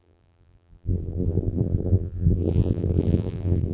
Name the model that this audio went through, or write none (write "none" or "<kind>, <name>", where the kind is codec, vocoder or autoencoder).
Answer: vocoder, BigVGAN v2